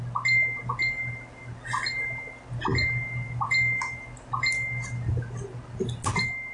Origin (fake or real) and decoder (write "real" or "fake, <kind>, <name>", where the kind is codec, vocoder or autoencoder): real